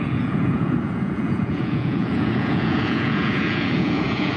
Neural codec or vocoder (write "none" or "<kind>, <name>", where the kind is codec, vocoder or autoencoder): vocoder, Vocos